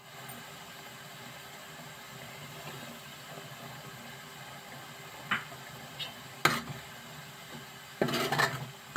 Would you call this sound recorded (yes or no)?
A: yes